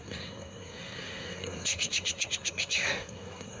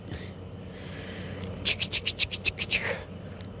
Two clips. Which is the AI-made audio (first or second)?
first